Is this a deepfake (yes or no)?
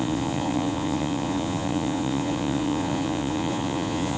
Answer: yes